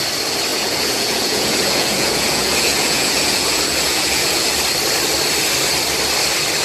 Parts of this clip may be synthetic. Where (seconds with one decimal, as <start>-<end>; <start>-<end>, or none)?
0.5-4.5